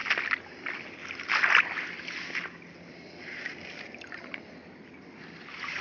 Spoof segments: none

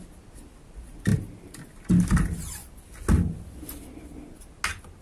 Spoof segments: none

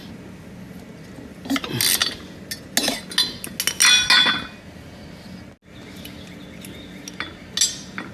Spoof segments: none

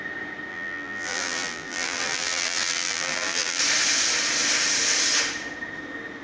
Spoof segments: 0.5-3.6

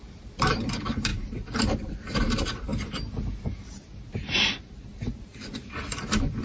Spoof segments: 0.0-1.1; 2.1-2.7; 3.4-5.3

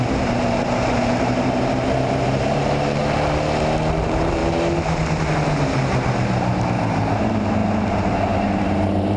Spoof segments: 0.0-3.0; 4.0-4.4; 5.5-9.2

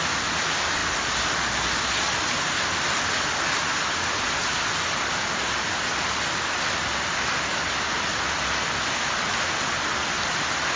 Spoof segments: none

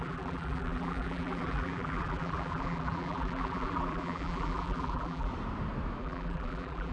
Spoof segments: 0.0-5.3; 6.0-6.9